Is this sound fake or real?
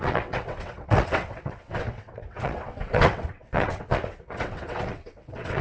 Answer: fake